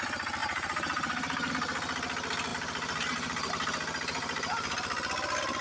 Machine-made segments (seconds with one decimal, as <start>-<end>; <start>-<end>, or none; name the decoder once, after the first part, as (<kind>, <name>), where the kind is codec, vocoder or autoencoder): 0.4-1.5 (vocoder, BigVGAN v2); 2.5-3.5; 4.2-4.7